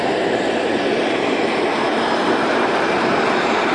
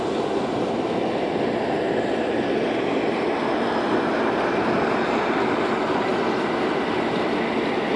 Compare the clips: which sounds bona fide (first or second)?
second